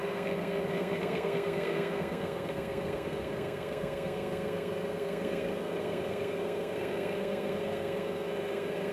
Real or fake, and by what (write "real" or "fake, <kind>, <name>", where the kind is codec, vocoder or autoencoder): fake, codec, SNAC